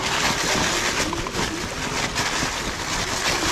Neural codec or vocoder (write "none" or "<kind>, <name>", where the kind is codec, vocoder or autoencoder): none